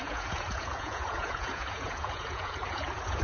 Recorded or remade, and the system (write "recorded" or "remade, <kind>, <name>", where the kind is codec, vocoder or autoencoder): remade, vocoder, Vocos